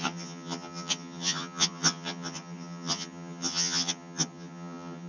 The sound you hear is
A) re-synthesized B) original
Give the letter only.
A